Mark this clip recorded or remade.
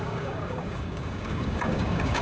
remade